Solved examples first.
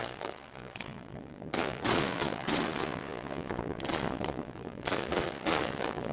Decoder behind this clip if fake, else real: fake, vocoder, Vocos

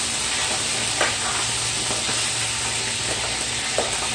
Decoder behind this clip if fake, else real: real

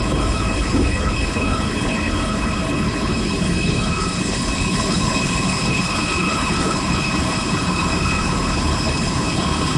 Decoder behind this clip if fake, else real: fake, codec, HILCodec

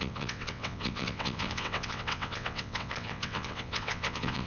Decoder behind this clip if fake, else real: fake, vocoder, WaveNeXt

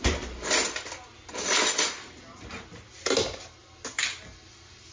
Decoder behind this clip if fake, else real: real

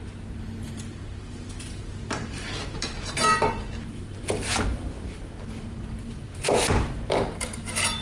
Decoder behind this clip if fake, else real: fake, vocoder, BigVGAN v2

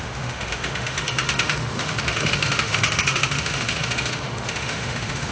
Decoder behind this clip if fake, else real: fake, autoencoder, DAC-VAE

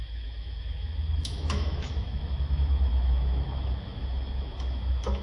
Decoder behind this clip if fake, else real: fake, autoencoder, DAC-VAE